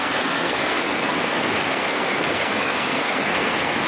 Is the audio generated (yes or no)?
yes